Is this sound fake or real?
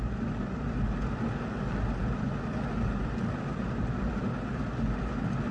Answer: real